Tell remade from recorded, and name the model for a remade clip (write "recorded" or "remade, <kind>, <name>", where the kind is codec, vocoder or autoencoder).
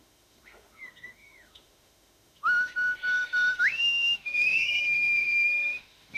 remade, autoencoder, DAC-VAE